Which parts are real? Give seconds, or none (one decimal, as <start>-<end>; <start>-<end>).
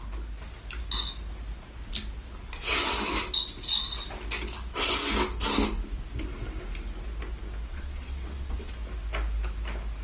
0.0-7.7; 8.7-10.0